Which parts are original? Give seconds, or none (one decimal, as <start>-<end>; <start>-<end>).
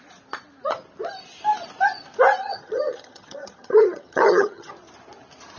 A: 0.0-2.4; 4.7-5.6